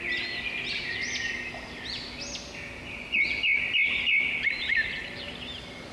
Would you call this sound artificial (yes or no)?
no